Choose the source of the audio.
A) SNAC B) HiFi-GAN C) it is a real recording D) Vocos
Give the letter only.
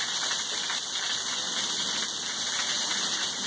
C